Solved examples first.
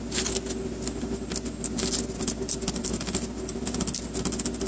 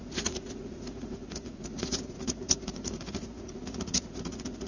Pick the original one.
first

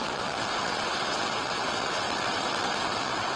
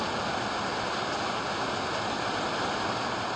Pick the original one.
second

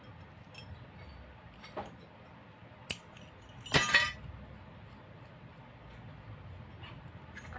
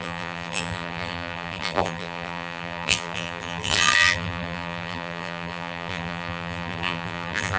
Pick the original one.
first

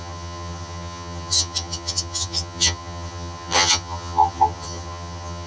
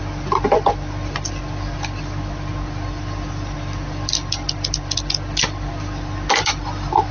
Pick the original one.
second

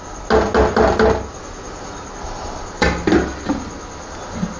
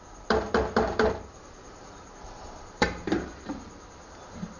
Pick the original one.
first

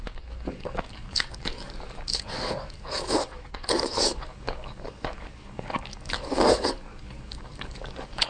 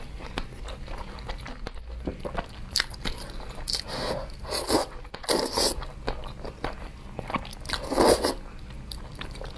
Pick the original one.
second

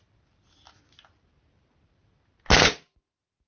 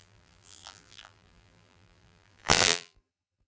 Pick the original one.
first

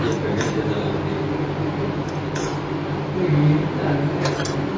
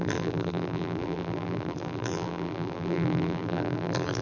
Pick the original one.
first